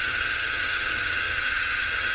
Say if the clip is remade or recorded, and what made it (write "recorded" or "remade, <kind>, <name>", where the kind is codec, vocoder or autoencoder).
remade, vocoder, HiFi-GAN